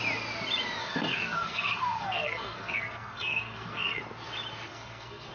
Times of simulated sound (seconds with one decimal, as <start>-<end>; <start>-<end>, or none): 0.8-4.0; 4.7-5.3